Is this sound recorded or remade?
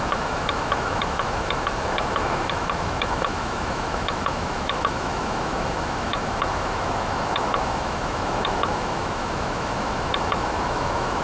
remade